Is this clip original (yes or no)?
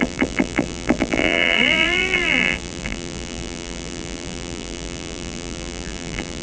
no